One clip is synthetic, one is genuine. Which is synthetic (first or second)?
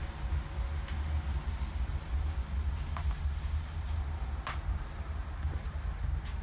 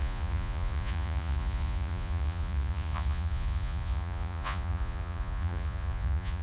second